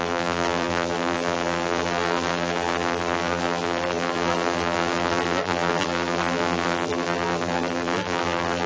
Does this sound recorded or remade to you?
remade